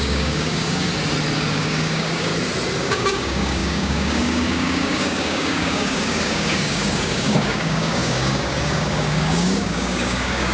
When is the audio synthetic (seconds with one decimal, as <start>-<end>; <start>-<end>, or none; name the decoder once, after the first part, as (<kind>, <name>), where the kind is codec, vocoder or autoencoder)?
0.0-0.9 (codec, DAC); 1.5-2.3; 2.8-10.5